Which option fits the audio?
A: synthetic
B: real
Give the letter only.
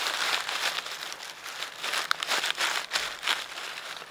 B